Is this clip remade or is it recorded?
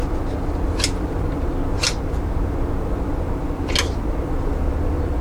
recorded